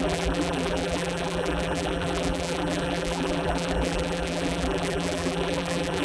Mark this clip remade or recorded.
remade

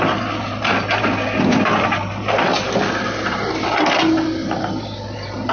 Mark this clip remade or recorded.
recorded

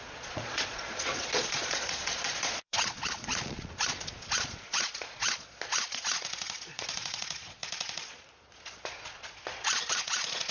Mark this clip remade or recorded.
remade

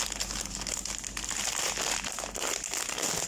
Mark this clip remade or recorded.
recorded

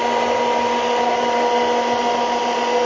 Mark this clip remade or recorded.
recorded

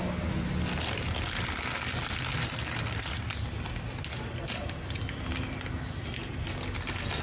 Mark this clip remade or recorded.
recorded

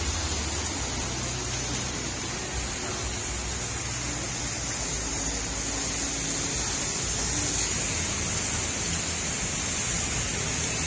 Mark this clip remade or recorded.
recorded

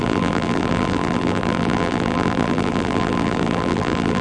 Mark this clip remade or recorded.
remade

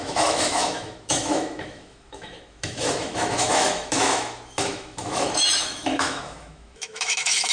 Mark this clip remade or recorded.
remade